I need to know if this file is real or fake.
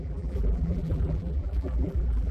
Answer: fake